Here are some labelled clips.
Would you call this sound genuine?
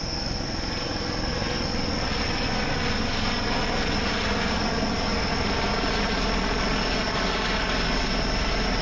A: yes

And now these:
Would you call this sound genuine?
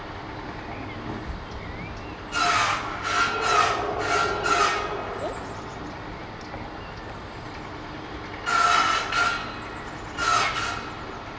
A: yes